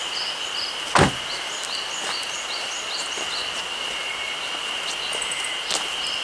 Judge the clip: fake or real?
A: real